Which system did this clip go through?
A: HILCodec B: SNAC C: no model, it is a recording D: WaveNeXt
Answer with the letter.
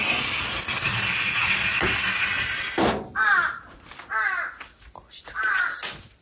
C